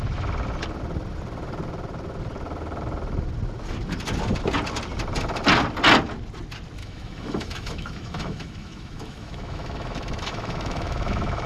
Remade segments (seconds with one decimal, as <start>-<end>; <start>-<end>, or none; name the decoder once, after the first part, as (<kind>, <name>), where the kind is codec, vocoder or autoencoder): 6.8-11.5 (autoencoder, DAC-VAE)

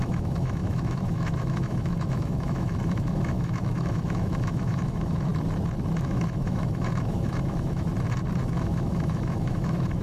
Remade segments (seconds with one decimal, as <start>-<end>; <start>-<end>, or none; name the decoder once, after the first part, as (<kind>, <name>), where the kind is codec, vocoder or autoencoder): 0.0-5.3 (autoencoder, DAC-VAE); 6.0-7.9; 8.5-10.0

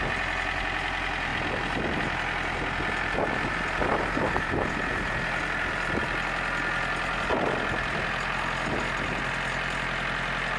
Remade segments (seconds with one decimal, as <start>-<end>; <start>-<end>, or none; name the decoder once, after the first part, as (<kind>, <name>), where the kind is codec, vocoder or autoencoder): none

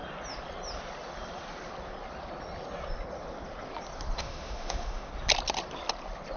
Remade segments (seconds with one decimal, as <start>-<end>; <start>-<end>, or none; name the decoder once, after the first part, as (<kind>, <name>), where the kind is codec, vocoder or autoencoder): 4.2-5.1 (autoencoder, DAC-VAE)

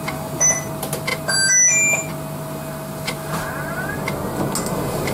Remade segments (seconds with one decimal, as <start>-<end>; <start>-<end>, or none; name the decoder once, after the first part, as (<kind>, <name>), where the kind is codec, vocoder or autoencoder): none

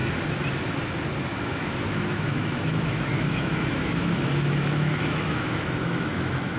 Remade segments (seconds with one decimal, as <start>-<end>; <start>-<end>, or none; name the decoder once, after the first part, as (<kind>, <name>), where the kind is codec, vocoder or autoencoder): 1.3-6.6 (autoencoder, DAC-VAE)

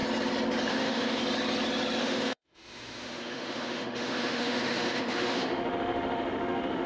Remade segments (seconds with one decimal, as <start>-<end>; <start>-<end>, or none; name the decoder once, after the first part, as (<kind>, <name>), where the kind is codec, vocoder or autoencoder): 0.7-1.2 (autoencoder, DAC-VAE); 2.0-6.9